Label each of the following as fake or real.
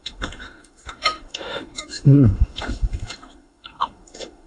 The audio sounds fake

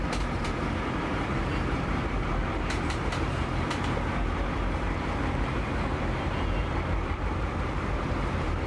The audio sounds fake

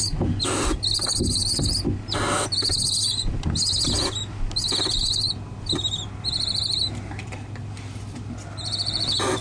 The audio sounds real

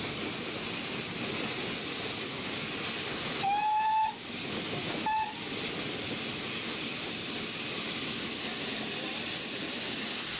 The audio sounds real